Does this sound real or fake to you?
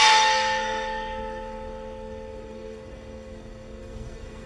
fake